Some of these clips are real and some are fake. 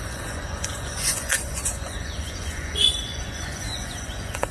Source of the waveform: fake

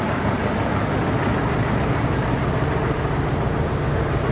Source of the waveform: real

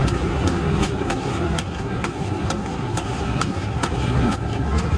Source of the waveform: fake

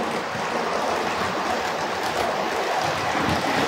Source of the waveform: real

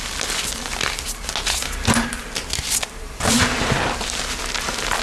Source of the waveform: real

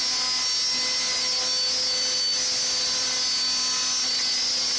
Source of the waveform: real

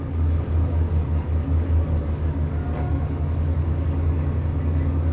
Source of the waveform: fake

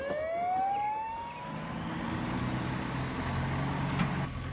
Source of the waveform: real